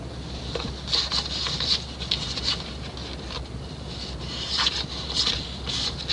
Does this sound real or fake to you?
real